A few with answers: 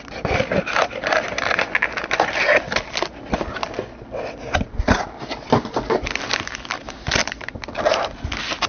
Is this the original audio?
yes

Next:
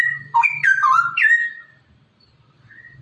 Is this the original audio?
yes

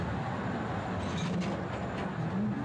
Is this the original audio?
yes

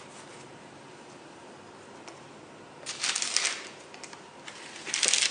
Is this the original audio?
yes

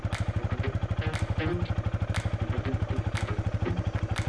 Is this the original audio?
yes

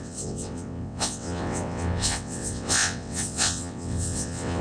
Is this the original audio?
no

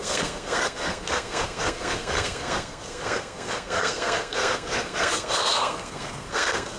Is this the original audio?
no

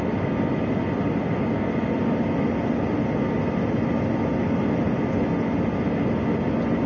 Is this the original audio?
yes